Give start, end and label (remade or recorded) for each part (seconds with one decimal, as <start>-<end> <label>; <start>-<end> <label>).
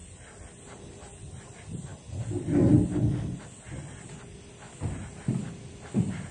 0.0-6.3 recorded